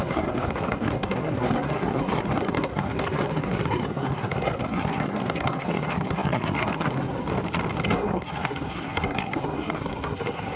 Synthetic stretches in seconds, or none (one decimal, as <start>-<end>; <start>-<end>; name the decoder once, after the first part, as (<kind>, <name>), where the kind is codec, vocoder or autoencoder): 0.0-7.3 (codec, SNAC); 7.8-10.6